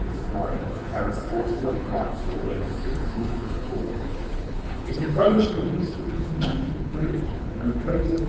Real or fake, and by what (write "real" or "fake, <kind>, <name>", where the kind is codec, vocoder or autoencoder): fake, codec, HILCodec